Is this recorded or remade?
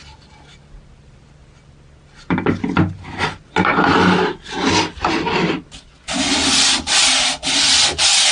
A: recorded